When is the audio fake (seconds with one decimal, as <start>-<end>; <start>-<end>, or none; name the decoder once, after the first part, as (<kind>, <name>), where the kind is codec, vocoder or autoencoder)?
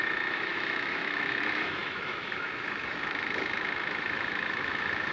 0.0-5.1 (autoencoder, DAC-VAE)